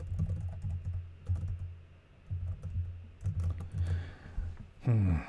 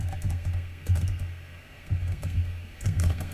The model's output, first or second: second